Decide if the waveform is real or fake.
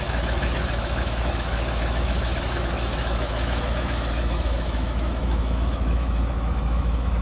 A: fake